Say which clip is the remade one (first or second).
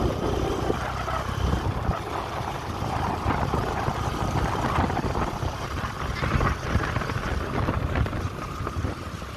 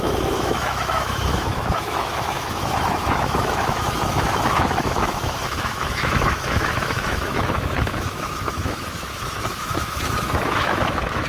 second